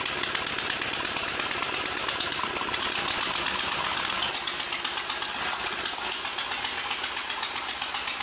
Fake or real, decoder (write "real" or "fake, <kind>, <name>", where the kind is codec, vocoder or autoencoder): real